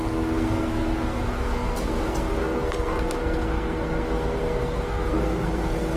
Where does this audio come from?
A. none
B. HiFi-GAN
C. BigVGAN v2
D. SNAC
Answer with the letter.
D